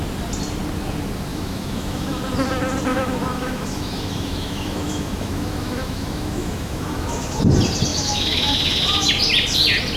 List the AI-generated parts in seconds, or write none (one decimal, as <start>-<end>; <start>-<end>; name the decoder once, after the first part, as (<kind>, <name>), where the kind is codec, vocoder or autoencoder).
1.3-2.2 (autoencoder, DAC-VAE); 2.9-7.4; 7.9-9.1